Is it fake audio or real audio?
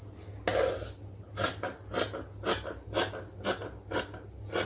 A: real